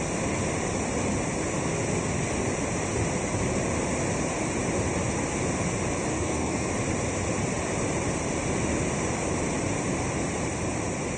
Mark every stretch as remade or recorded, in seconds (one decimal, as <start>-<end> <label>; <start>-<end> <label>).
0.0-6.1 recorded; 6.1-6.7 remade; 6.7-11.2 recorded